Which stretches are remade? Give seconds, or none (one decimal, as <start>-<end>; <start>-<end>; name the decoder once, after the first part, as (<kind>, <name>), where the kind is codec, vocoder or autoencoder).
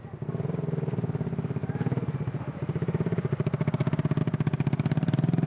0.0-1.6 (vocoder, BigVGAN v2); 2.4-3.8; 4.7-5.5